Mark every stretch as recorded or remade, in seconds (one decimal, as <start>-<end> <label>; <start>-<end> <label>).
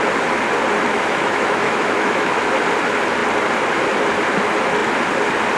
0.0-0.9 recorded; 0.9-2.4 remade; 2.4-5.6 recorded